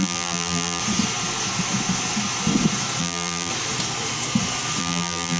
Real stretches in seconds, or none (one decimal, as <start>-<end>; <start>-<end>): 0.8-3.0; 3.5-4.8